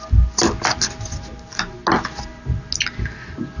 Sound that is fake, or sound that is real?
real